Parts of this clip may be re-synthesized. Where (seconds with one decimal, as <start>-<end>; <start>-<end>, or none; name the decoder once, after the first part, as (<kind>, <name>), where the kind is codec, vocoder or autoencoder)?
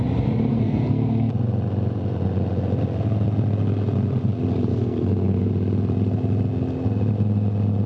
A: 0.5-1.3 (codec, SNAC); 4.7-5.5